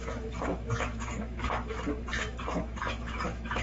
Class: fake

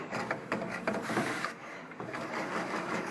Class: fake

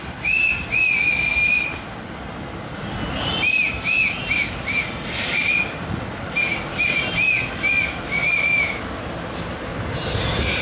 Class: real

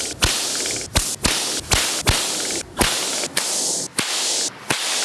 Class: real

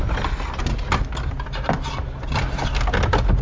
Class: real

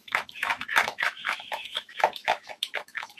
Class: fake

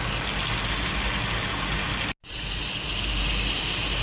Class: real